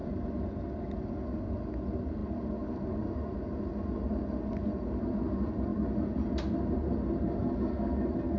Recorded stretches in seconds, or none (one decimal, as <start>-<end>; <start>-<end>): 0.0-8.4